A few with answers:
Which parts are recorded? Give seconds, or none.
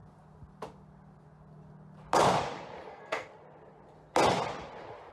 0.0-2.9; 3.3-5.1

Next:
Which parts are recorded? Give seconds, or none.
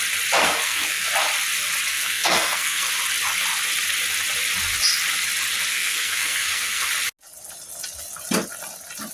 0.0-0.4; 1.1-1.9; 2.9-5.7; 6.9-9.1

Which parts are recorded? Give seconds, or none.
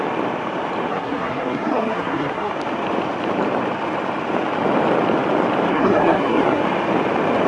0.0-0.9; 2.5-5.7; 6.6-7.5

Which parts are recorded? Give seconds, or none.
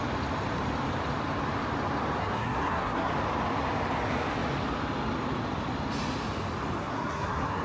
0.0-2.2; 3.1-6.8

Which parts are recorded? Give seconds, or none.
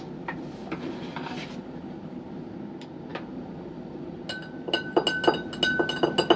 0.0-6.4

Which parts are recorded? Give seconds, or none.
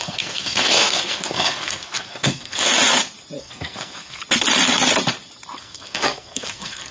2.7-3.4; 4.2-5.6